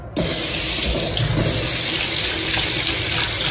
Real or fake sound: real